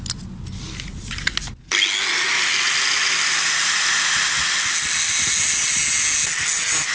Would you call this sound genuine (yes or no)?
yes